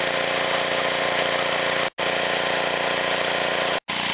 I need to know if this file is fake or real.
real